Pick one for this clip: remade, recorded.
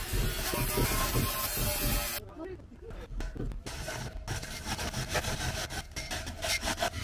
recorded